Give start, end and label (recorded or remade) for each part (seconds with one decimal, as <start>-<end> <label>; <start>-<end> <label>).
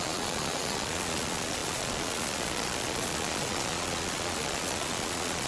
0.0-5.5 remade